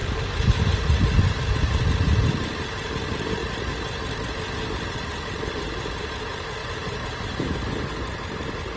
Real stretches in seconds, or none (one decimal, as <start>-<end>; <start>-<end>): 1.5-6.6; 7.5-8.8